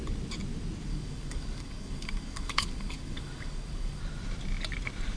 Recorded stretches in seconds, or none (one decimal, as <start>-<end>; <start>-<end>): 0.0-0.9; 4.0-5.2